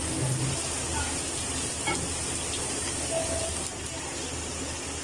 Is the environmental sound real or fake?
real